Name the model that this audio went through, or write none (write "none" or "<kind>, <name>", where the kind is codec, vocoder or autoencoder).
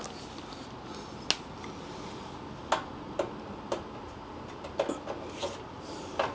none